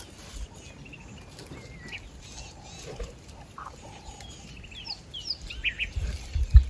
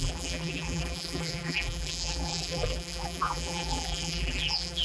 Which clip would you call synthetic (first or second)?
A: second